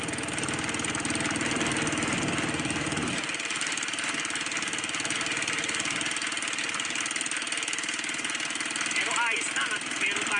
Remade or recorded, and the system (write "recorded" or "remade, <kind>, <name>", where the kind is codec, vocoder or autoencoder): recorded